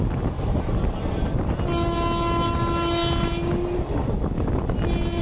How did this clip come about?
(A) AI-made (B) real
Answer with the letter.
B